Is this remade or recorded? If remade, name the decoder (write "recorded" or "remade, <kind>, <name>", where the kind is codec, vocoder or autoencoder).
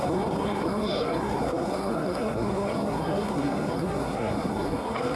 remade, codec, SNAC